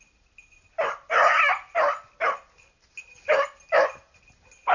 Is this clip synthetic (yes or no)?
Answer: no